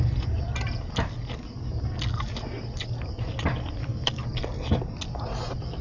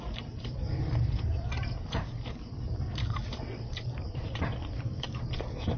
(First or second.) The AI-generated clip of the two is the second